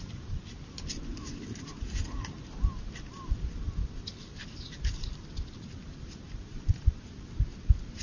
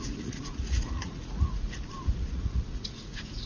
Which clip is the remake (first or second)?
second